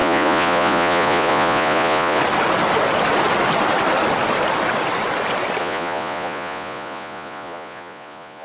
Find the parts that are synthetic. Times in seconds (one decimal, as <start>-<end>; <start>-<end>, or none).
0.0-2.2; 5.6-8.4